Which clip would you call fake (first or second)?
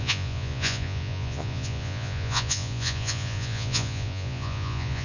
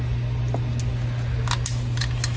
first